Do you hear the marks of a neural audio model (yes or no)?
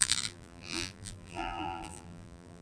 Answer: yes